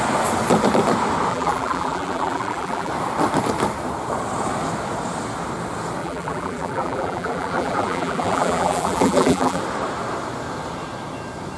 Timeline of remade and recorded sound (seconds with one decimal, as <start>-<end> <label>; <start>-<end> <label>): 0.0-1.3 recorded; 1.3-2.9 remade; 2.9-6.0 recorded; 6.0-9.6 remade; 9.6-11.6 recorded

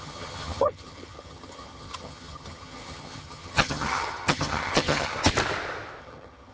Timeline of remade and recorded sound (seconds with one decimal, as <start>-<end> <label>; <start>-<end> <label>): 0.0-5.2 remade; 5.2-6.0 recorded; 6.0-6.5 remade

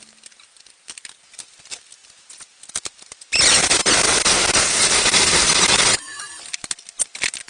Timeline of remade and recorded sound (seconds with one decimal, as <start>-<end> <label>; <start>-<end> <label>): 0.0-7.5 recorded

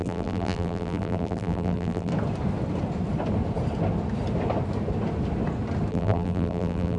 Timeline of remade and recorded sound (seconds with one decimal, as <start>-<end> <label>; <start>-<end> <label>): 0.0-2.1 remade; 2.1-5.9 recorded; 5.9-7.0 remade

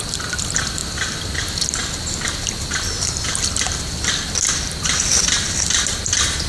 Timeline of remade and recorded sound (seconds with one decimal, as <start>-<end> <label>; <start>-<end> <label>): 0.0-6.5 recorded